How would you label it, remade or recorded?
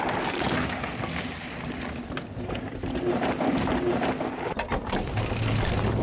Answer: recorded